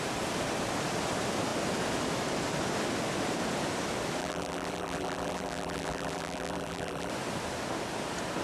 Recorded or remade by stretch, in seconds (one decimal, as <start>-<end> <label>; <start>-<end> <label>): 0.0-4.2 recorded; 4.2-7.1 remade; 7.1-8.4 recorded

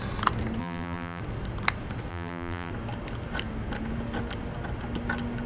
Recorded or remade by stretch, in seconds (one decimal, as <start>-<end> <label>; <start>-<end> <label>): 0.0-0.6 recorded; 0.6-1.2 remade; 1.2-2.1 recorded; 2.1-2.7 remade; 2.7-5.5 recorded